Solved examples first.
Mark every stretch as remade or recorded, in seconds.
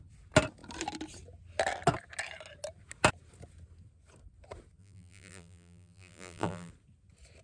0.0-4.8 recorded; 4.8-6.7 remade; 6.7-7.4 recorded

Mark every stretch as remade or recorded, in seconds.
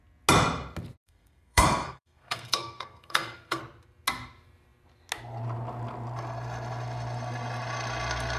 0.0-1.0 recorded; 1.0-3.6 remade; 3.6-8.4 recorded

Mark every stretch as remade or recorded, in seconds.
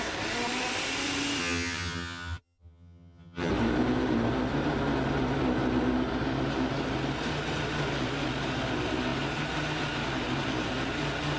0.0-1.4 recorded; 1.4-3.5 remade; 3.5-11.4 recorded